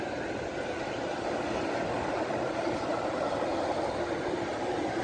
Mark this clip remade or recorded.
recorded